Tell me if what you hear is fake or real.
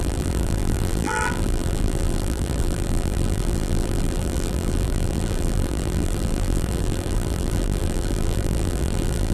fake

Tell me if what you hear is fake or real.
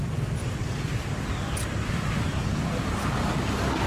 real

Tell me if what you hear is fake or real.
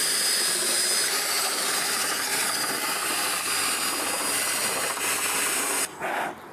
real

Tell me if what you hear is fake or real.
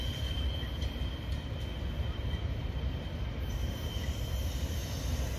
real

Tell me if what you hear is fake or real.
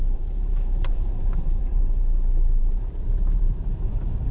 fake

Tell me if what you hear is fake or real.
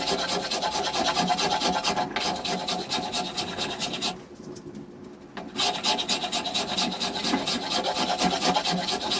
real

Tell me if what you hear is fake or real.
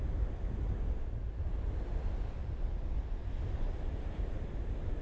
real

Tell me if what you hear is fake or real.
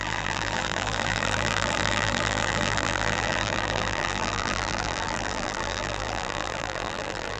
fake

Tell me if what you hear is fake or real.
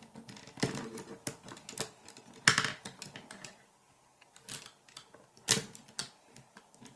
real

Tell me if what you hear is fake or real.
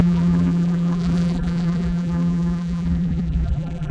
fake